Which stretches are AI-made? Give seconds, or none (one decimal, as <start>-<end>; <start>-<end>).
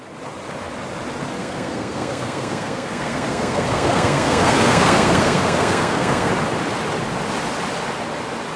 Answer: 1.4-6.3